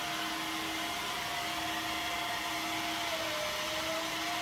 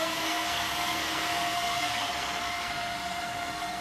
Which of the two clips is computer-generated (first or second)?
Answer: second